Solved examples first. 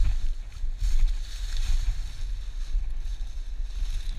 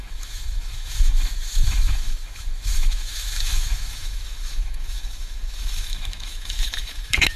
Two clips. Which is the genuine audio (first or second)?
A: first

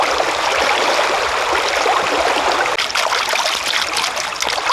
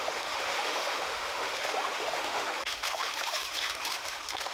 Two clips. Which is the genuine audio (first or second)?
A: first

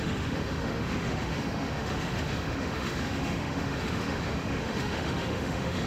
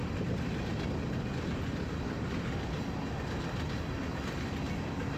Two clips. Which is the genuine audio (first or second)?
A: second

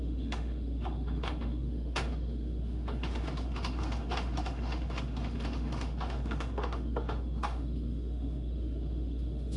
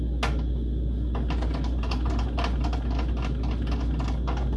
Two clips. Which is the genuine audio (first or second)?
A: second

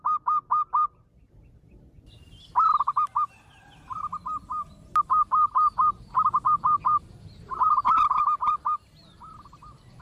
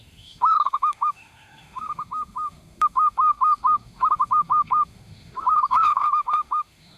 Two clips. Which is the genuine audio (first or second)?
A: first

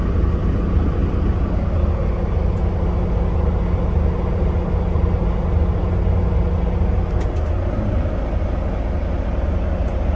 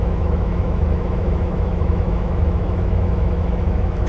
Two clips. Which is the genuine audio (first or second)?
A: first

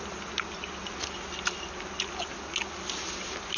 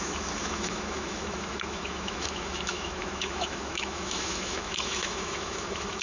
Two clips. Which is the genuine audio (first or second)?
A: first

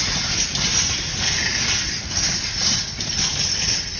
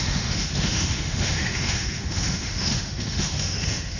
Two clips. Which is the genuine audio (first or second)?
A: first